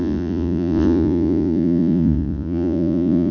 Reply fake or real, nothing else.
fake